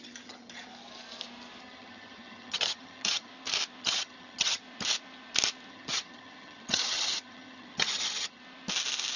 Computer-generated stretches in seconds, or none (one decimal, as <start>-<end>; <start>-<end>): 0.0-0.7; 1.6-3.3; 3.8-4.6; 5.7-8.4